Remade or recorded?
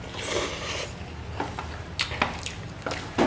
recorded